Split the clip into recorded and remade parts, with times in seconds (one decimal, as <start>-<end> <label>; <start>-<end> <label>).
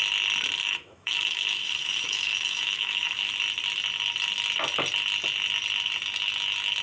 0.0-0.6 recorded; 0.6-3.3 remade; 3.3-6.8 recorded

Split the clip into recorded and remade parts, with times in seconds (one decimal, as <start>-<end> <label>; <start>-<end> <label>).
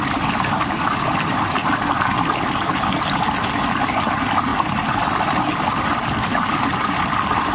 0.0-7.5 recorded